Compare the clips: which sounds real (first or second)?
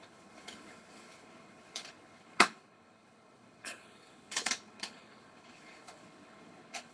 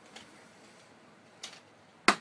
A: second